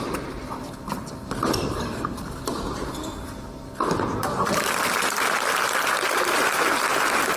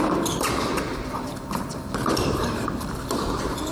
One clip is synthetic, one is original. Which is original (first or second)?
first